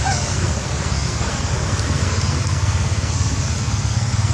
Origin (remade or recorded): remade